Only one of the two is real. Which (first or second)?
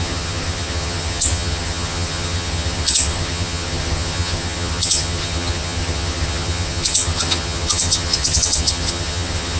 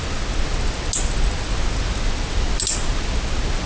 second